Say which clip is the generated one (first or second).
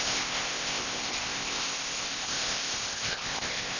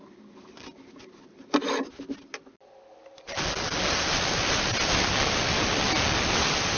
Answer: first